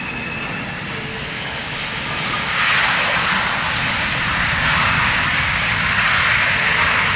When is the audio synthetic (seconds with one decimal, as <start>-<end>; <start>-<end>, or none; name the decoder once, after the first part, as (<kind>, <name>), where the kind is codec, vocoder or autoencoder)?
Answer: 1.1-2.8 (codec, DAC); 4.4-5.9